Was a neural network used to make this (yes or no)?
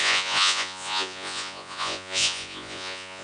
yes